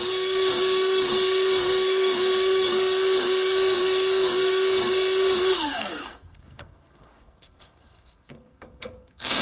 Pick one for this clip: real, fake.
fake